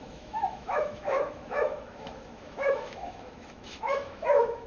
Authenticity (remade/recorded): remade